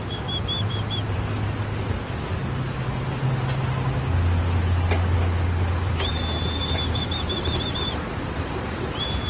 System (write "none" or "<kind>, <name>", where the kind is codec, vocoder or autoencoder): none